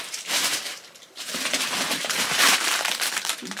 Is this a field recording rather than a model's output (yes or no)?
no